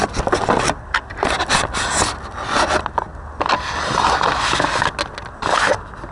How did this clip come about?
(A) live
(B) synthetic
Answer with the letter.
A